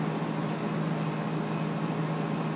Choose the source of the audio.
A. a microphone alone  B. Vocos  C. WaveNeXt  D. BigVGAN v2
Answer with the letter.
A